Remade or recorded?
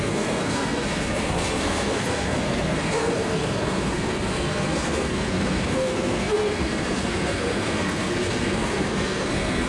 remade